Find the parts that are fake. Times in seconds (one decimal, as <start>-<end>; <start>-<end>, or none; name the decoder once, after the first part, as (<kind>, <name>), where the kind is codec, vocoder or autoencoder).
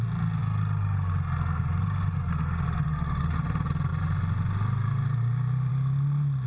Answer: none